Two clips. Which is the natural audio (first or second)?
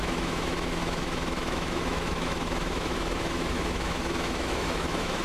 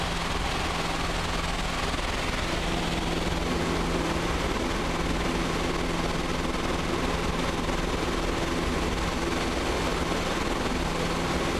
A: second